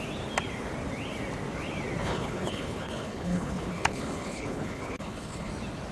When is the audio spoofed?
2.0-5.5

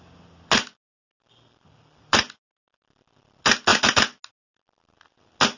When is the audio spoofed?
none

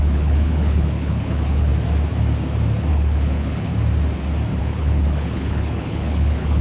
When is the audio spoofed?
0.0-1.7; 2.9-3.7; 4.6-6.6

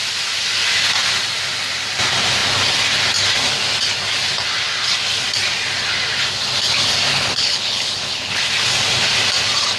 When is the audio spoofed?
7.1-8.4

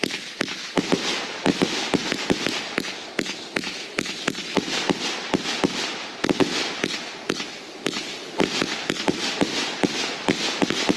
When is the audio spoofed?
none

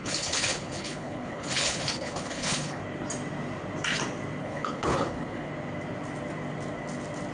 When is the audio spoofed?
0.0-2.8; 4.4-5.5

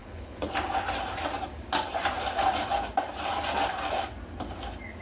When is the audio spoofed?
0.0-0.5

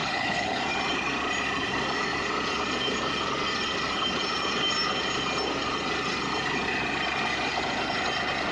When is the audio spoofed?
0.0-0.6